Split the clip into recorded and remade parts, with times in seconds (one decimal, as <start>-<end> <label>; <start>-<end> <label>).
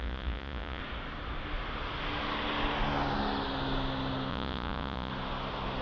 0.0-0.8 remade; 0.8-4.3 recorded; 4.3-5.1 remade; 5.1-5.8 recorded